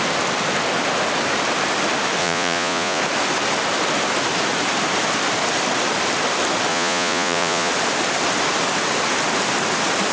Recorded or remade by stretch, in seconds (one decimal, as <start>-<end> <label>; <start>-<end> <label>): 0.0-2.2 recorded; 2.2-3.0 remade; 3.0-6.7 recorded; 6.7-7.7 remade; 7.7-10.1 recorded